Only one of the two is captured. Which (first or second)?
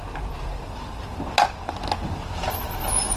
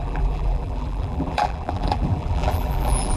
first